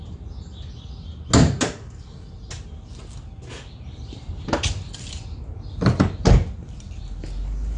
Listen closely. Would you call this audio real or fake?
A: real